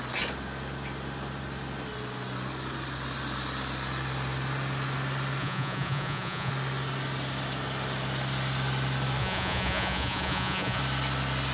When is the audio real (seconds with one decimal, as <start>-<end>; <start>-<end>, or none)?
0.0-5.4; 6.5-9.2; 10.8-11.5